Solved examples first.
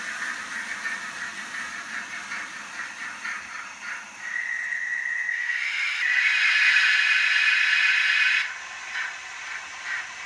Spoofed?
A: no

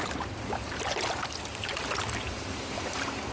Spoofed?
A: yes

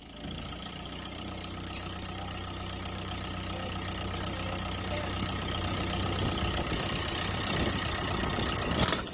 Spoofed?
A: no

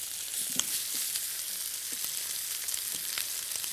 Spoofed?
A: no